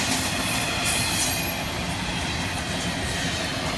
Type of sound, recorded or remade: recorded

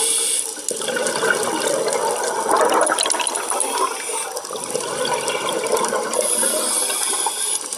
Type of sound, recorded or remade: recorded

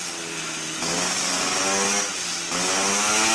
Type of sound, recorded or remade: recorded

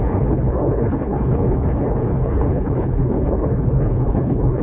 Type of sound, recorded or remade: remade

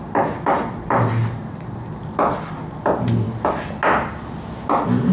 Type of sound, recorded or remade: recorded